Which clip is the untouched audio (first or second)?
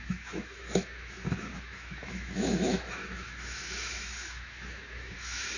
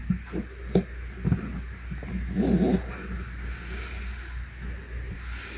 second